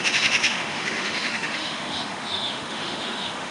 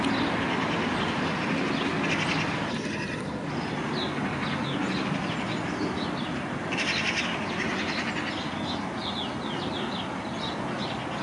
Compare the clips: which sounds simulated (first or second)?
first